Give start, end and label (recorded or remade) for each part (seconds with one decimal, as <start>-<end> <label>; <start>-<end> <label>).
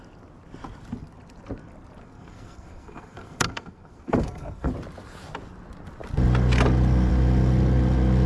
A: 0.0-2.0 recorded; 2.0-4.7 remade; 4.7-8.3 recorded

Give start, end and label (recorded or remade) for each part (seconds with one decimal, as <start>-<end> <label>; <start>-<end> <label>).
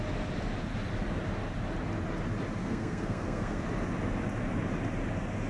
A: 0.0-2.6 recorded; 2.6-3.6 remade; 3.6-5.5 recorded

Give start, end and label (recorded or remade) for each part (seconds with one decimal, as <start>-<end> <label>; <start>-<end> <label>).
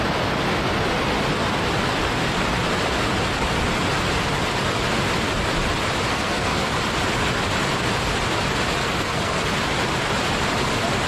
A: 0.0-6.1 recorded; 6.1-6.7 remade; 6.7-8.8 recorded; 8.8-9.4 remade; 9.4-11.1 recorded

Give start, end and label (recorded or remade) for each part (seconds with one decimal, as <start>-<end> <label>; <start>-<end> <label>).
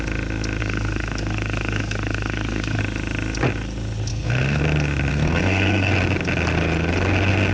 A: 0.0-0.6 recorded; 0.6-2.8 remade; 2.8-4.1 recorded; 4.1-4.6 remade; 4.6-5.1 recorded; 5.1-5.9 remade; 5.9-7.5 recorded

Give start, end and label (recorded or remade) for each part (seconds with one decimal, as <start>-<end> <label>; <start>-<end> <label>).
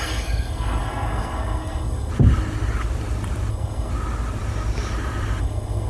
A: 0.0-2.1 remade; 2.1-3.5 recorded; 3.5-3.9 remade; 3.9-5.4 recorded; 5.4-5.9 remade